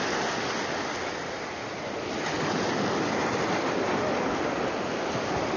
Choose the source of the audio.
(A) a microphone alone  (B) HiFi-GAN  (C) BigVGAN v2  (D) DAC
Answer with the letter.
A